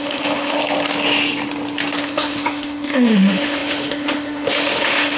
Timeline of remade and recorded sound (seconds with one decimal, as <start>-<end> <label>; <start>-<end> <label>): 0.0-0.6 remade; 0.6-2.0 recorded; 2.0-5.2 remade